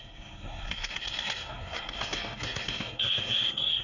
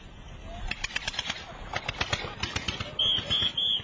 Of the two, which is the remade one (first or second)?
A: first